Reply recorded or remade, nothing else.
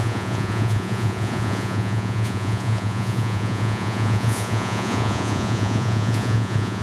remade